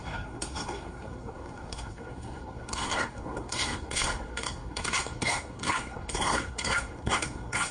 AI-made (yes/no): yes